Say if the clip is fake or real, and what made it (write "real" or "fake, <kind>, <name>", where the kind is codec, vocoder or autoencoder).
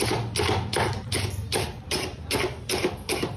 real